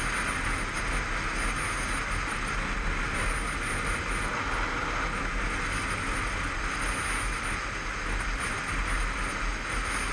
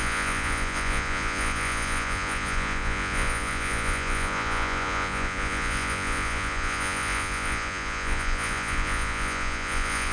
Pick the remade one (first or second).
second